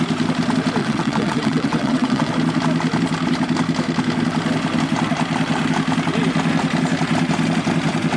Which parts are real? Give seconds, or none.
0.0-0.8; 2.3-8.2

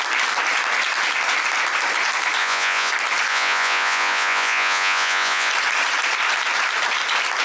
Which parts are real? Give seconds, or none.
0.0-2.4; 2.9-3.3; 5.5-7.4

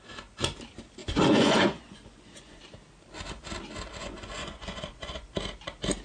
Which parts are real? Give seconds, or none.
0.0-1.0; 2.6-4.0; 5.3-6.0